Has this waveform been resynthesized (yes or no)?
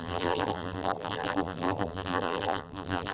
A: yes